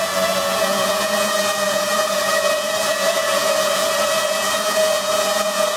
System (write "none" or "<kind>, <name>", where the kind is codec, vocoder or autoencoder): vocoder, Vocos